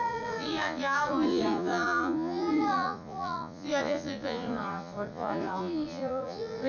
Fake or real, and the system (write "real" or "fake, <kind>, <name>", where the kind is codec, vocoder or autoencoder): fake, vocoder, Vocos